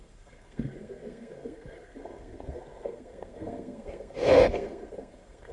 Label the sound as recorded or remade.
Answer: remade